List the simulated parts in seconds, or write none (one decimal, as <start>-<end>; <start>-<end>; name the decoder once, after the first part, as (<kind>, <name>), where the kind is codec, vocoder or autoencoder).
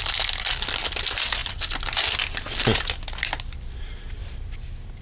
none